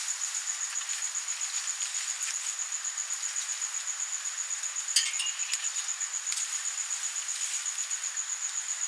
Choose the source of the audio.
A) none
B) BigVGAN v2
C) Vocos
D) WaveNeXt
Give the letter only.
A